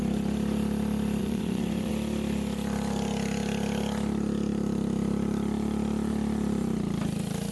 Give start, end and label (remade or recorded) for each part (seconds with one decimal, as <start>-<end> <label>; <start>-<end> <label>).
0.0-1.2 recorded; 1.2-1.9 remade; 1.9-7.5 recorded